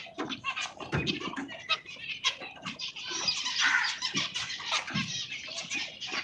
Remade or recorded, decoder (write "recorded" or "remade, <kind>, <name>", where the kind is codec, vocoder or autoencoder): remade, vocoder, BigVGAN v2